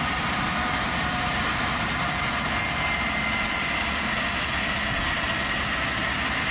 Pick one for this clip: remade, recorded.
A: recorded